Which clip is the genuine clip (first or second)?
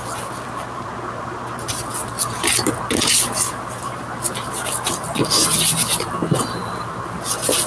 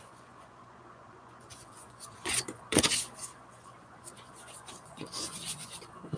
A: first